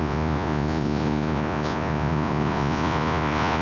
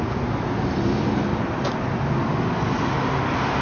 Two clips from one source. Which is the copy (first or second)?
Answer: first